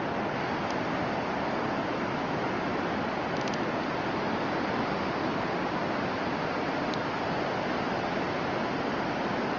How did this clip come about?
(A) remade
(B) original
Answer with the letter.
B